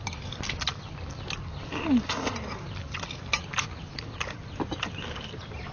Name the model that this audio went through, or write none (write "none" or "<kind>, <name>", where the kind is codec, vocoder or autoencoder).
none